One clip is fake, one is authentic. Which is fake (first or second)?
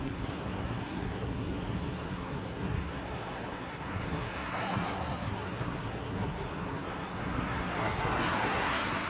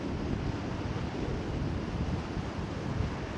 first